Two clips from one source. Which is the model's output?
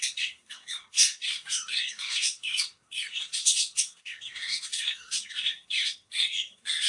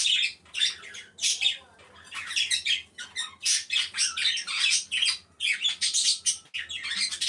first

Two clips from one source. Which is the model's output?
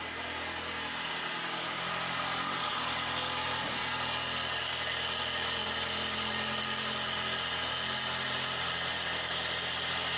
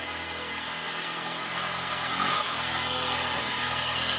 second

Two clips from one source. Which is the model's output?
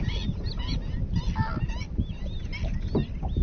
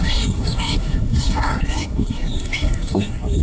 second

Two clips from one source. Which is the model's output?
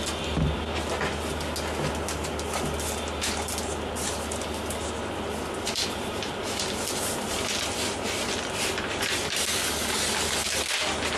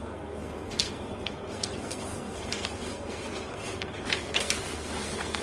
second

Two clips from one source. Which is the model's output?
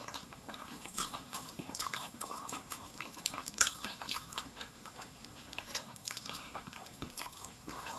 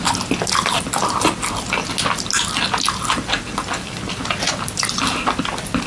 first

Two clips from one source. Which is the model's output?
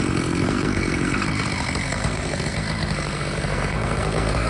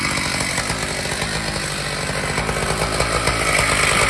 first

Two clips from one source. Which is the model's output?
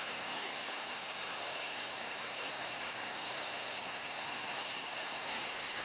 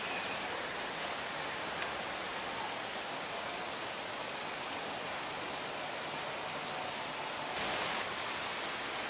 first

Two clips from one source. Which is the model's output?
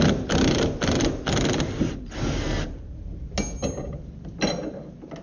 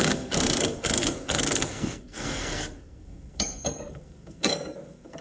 second